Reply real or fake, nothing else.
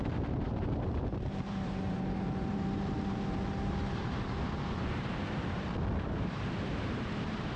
fake